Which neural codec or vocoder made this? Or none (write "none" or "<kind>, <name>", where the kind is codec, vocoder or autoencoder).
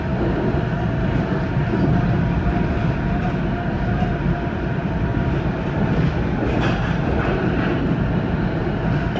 none